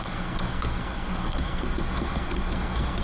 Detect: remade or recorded remade